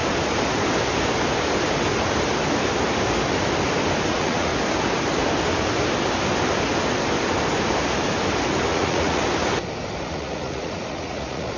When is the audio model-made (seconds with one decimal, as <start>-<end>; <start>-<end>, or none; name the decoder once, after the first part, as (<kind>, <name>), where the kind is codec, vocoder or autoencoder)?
4.1-4.5 (vocoder, Vocos); 8.7-9.2; 10.0-11.6